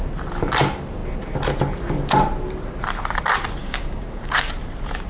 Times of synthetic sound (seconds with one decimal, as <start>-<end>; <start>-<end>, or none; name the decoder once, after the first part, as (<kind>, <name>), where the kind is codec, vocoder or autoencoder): 3.6-4.5 (codec, DAC)